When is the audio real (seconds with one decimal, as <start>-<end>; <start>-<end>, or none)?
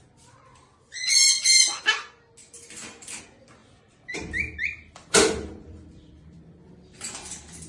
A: 0.0-0.6; 1.8-2.4; 3.2-3.6; 6.7-7.7